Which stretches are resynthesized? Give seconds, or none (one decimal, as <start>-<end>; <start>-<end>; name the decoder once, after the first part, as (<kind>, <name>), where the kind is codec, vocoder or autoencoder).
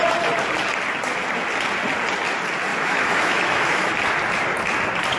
2.7-3.9 (autoencoder, DAC-VAE)